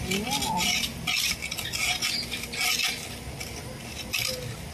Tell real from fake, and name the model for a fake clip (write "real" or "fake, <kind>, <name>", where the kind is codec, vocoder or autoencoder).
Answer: real